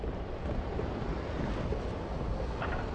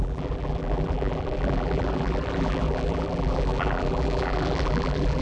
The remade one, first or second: second